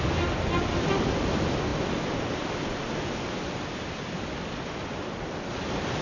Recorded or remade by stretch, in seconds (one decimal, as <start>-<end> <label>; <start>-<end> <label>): 0.0-6.0 recorded